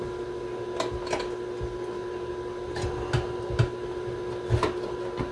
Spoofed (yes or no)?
no